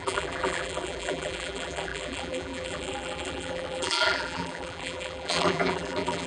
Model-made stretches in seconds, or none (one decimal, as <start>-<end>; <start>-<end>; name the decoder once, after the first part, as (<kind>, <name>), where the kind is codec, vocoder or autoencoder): 0.0-6.3 (vocoder, BigVGAN v2)